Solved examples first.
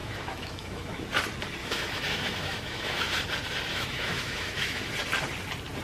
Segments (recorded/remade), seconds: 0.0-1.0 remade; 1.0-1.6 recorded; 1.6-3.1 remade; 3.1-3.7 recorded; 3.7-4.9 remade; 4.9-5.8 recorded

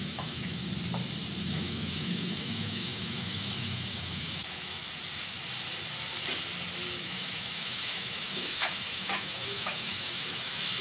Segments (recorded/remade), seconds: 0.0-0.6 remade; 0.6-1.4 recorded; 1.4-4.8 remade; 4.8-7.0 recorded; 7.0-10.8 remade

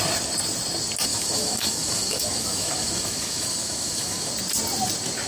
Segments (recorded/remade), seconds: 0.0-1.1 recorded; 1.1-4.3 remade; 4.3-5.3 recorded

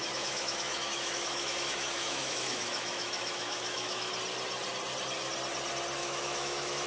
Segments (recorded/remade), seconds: 0.0-4.1 remade; 4.1-6.0 recorded; 6.0-6.9 remade

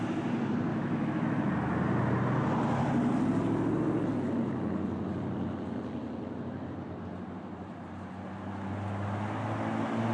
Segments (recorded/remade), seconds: 0.0-0.7 recorded; 0.7-1.5 remade; 1.5-10.1 recorded

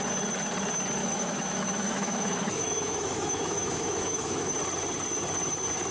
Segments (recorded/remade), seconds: 0.0-1.0 recorded; 1.0-4.5 remade; 4.5-5.9 recorded